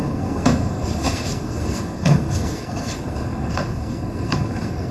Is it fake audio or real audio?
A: fake